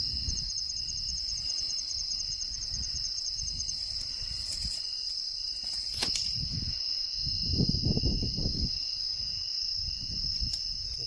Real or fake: fake